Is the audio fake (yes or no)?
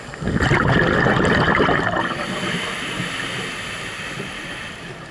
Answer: no